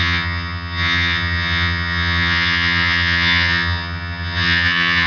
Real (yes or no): no